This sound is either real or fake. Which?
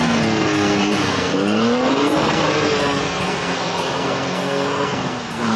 fake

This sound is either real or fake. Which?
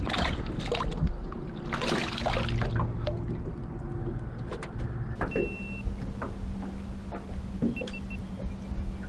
real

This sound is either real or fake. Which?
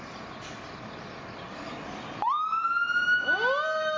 real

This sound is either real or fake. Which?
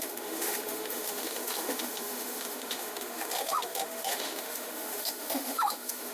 fake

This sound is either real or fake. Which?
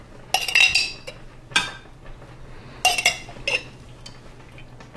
real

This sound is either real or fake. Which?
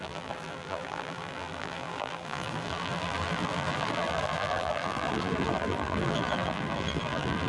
fake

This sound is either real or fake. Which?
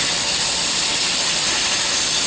real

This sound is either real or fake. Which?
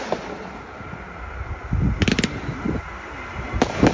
real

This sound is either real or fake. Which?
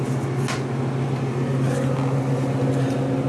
real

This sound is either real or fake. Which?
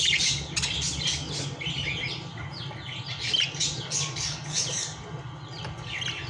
real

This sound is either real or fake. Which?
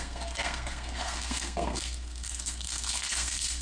fake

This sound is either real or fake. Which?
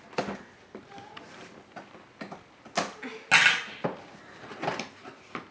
real